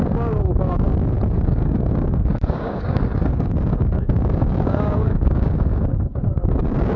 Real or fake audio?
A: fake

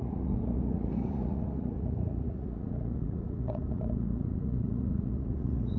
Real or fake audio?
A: fake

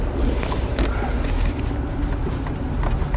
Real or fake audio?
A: real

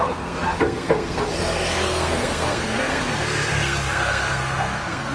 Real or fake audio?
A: fake